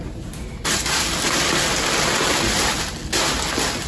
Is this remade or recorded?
recorded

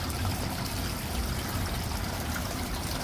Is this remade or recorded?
recorded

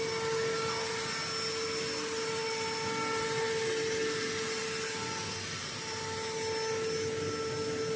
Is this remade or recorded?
recorded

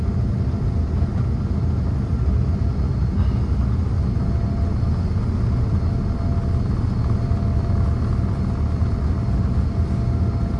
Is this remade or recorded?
recorded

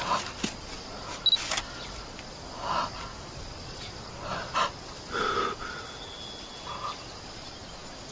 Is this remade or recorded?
recorded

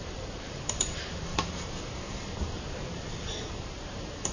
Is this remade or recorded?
remade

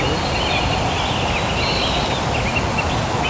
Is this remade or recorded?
recorded